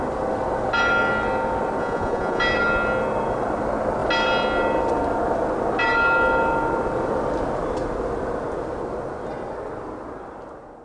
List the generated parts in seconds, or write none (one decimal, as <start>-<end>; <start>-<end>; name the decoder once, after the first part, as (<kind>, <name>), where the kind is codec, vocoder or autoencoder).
1.8-2.4 (vocoder, Vocos)